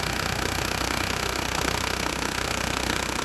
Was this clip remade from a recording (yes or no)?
yes